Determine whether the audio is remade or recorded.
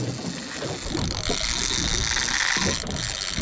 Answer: recorded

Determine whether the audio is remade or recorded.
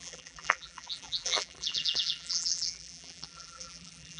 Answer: remade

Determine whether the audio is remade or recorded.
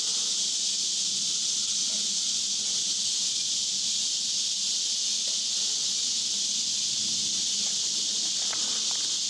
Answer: recorded